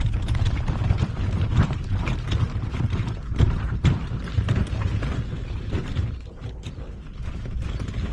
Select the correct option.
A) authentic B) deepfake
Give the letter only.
B